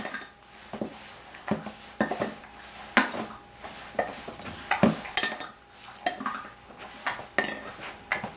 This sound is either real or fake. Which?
real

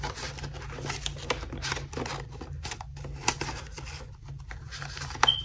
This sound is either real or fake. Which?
real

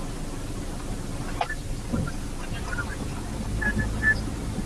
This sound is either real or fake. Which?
real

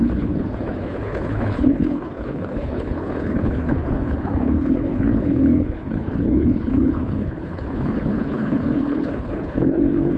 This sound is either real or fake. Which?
fake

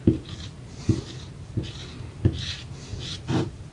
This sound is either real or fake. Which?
real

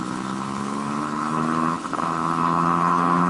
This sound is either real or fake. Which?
fake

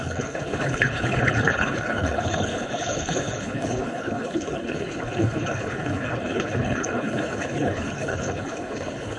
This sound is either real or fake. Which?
fake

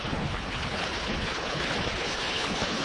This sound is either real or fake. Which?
fake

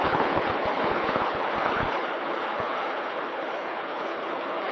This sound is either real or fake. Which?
fake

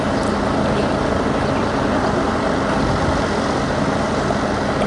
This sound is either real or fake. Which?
real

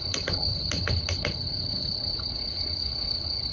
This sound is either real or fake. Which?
fake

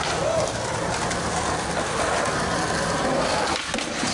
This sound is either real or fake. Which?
real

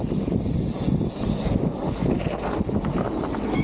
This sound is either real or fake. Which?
real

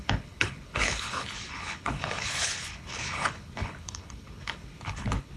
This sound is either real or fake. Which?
fake